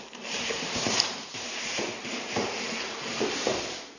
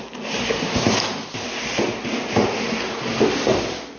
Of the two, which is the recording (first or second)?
second